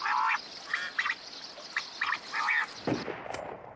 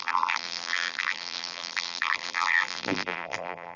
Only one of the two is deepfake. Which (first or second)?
second